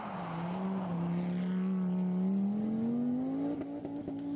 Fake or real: real